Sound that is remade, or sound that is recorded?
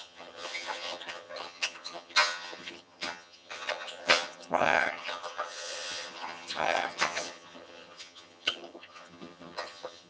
remade